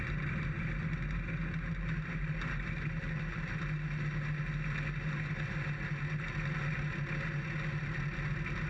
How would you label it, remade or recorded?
recorded